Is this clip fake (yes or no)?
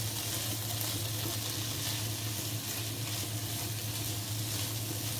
no